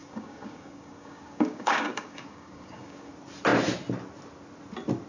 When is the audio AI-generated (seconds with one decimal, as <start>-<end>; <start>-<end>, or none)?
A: 0.0-3.1